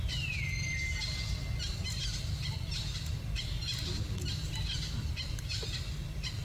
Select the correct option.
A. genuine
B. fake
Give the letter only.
A